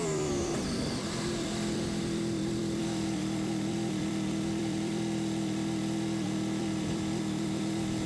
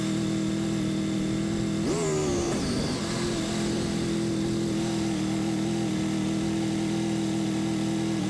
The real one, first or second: second